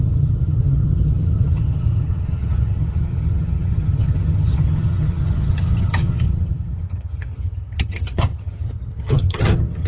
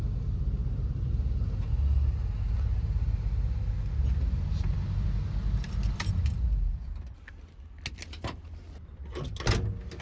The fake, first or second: first